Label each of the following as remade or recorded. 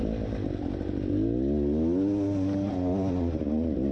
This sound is recorded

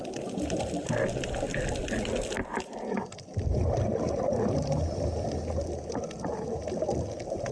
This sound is recorded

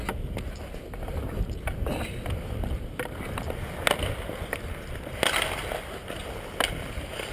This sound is recorded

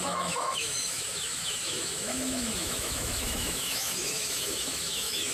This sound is remade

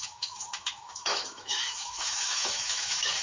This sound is remade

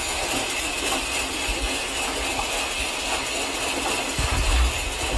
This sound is recorded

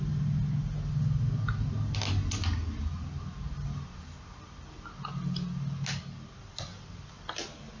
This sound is recorded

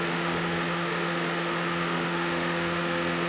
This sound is remade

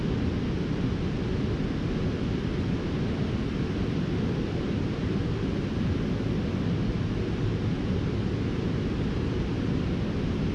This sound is recorded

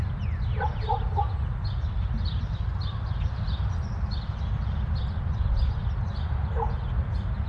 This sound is recorded